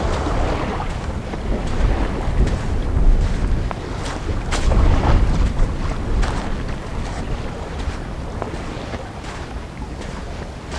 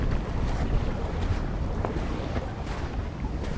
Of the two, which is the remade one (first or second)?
second